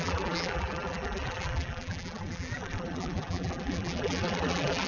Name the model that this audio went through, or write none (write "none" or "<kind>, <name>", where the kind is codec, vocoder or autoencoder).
vocoder, BigVGAN v2